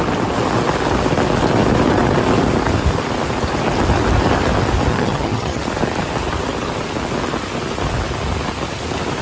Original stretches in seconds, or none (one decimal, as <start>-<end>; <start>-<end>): 0.0-4.9; 5.6-9.2

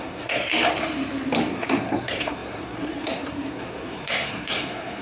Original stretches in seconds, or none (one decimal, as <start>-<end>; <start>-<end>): 0.5-1.5

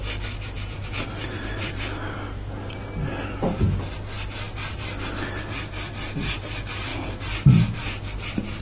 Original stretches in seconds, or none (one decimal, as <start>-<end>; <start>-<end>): 0.0-8.6

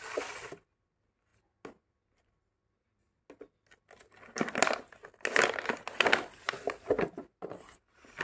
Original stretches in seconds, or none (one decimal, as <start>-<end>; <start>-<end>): 0.0-8.2